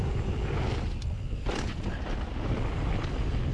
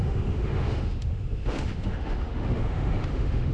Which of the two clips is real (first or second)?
first